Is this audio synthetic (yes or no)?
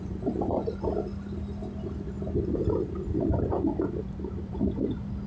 no